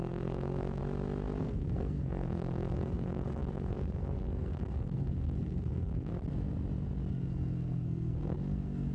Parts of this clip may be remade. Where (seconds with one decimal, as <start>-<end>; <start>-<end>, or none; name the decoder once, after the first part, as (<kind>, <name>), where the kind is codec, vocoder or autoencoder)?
0.0-0.8 (codec, SNAC); 1.4-6.1; 7.1-8.9